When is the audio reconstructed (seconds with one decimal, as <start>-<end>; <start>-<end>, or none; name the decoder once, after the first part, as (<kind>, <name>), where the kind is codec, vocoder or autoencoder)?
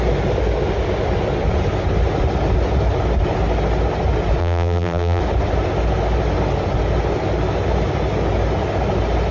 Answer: 4.4-5.2 (vocoder, BigVGAN v2)